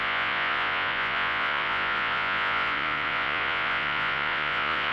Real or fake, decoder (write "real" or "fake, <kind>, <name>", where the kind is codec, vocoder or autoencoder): fake, vocoder, Vocos